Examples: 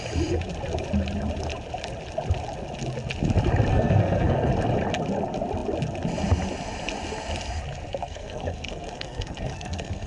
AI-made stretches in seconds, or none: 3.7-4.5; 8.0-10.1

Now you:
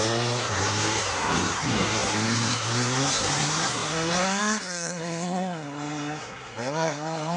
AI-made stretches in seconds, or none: 0.0-7.4

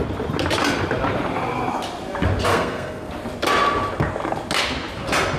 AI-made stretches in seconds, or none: 2.5-3.1

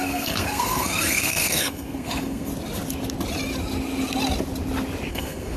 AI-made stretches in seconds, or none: 0.0-2.5; 5.1-5.6

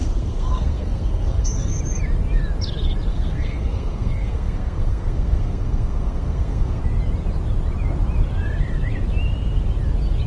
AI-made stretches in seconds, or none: 0.0-1.8; 3.1-6.8

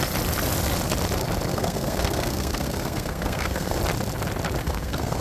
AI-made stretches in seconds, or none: 1.5-3.8; 4.6-5.2